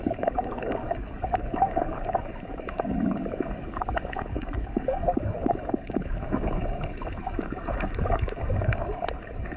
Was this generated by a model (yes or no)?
yes